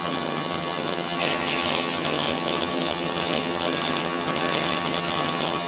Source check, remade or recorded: remade